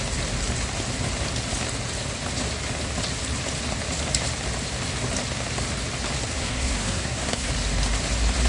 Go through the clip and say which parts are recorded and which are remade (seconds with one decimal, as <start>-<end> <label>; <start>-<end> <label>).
0.0-6.3 recorded; 6.3-7.5 remade; 7.5-8.5 recorded